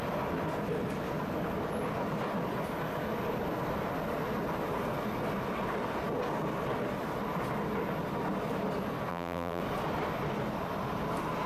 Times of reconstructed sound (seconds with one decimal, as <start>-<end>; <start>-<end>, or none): 9.1-9.6